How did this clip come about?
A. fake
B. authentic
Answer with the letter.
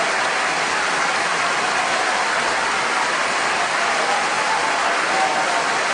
B